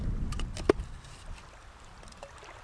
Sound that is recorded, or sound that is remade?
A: recorded